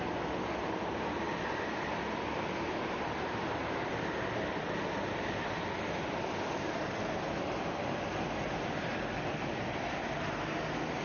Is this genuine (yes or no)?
yes